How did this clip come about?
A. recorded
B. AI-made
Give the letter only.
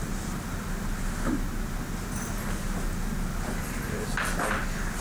A